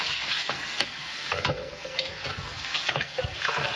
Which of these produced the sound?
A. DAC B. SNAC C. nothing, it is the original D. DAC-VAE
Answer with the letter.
B